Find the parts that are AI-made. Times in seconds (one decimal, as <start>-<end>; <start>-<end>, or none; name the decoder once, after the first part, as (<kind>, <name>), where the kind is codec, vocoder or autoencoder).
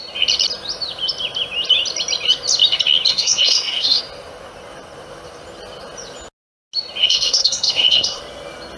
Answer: 3.1-4.0 (codec, SNAC); 7.0-8.2